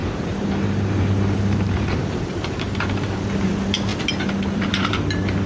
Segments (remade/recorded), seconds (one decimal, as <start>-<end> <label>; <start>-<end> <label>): 0.0-2.7 remade; 2.7-5.5 recorded